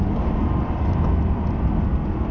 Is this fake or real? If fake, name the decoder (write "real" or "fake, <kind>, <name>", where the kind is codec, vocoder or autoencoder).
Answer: real